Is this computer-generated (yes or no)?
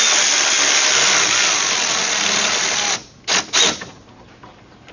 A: no